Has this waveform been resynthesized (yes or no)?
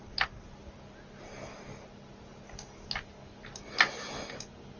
no